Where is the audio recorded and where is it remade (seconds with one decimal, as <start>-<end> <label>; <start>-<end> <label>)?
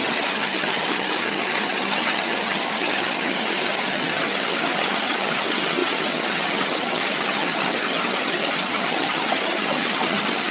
0.0-10.5 remade